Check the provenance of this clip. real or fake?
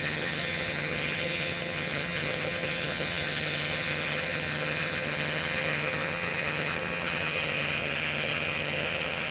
fake